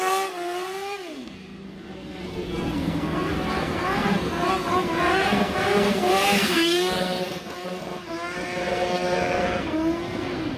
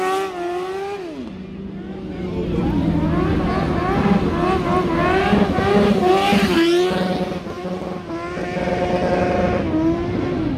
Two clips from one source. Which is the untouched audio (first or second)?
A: second